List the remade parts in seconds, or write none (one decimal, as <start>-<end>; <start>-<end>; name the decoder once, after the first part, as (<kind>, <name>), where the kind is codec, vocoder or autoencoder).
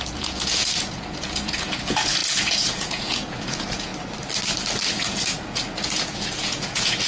0.0-3.9 (vocoder, Vocos); 4.9-7.1